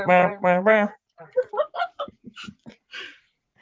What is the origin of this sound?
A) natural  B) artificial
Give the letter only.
B